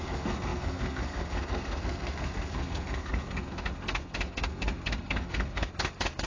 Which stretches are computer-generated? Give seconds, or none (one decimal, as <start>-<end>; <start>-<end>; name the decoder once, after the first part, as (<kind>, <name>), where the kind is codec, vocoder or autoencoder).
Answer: 0.0-6.3 (codec, SNAC)